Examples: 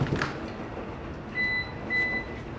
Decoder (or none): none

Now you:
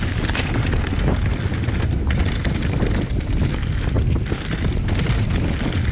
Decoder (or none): none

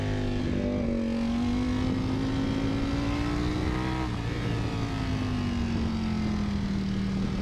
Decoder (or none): none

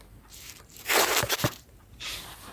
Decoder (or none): vocoder, BigVGAN v2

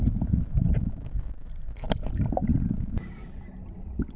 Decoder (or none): none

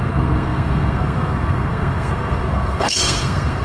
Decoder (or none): codec, SNAC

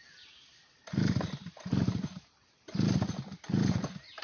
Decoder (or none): none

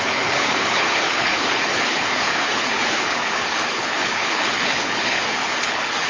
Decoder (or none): codec, HILCodec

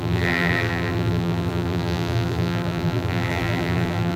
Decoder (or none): vocoder, BigVGAN v2